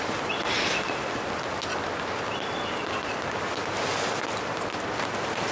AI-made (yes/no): no